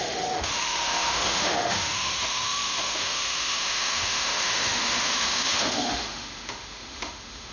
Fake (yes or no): yes